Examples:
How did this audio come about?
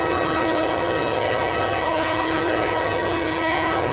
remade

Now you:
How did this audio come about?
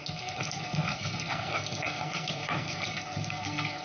remade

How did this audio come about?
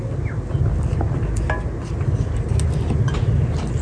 recorded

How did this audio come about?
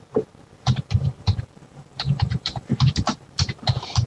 remade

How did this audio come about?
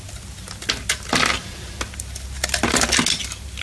recorded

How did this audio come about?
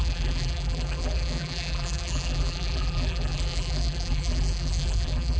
remade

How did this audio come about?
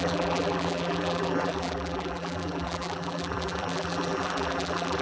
remade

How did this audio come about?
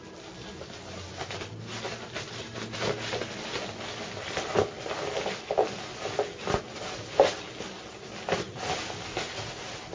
recorded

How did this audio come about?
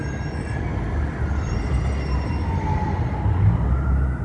recorded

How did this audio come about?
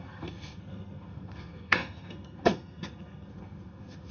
remade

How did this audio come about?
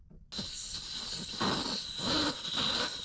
recorded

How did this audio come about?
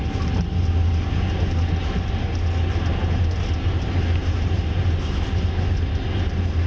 recorded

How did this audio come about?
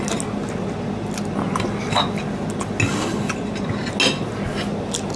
recorded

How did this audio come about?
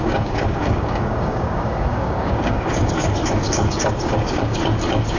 remade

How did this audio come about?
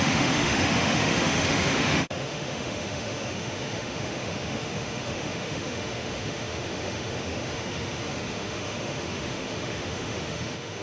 remade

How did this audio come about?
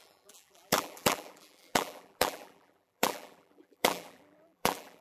remade